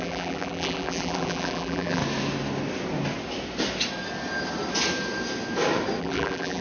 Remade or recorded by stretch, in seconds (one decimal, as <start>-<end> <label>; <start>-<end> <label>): 0.0-2.0 remade; 2.0-6.0 recorded; 6.0-6.6 remade